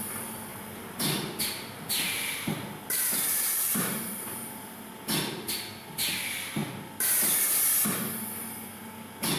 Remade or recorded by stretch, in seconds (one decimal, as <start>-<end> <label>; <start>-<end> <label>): 0.0-0.5 recorded; 0.5-4.9 remade; 4.9-9.4 recorded